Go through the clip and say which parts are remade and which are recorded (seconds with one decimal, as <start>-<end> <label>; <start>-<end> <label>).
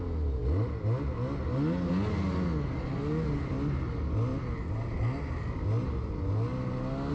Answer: 0.0-7.1 recorded